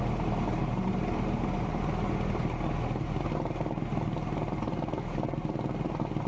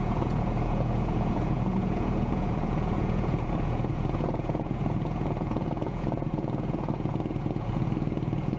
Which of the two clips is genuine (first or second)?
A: first